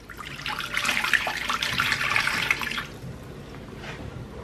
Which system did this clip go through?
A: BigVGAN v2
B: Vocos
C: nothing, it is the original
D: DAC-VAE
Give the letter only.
A